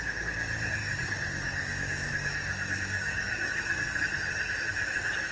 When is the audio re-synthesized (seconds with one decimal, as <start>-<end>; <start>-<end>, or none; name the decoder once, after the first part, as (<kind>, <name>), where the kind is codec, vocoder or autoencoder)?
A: 0.8-4.0 (codec, DAC)